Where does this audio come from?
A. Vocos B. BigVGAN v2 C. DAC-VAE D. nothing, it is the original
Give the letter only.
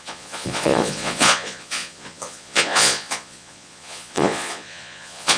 A